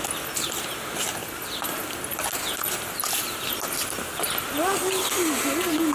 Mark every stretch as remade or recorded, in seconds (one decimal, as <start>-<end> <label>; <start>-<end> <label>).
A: 0.0-5.9 recorded